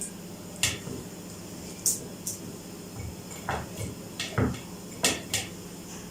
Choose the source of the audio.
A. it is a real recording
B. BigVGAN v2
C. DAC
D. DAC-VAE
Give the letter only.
A